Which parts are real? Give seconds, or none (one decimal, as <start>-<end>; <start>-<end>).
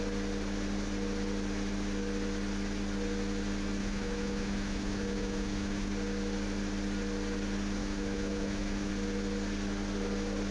0.0-3.8; 5.9-7.8; 8.9-10.5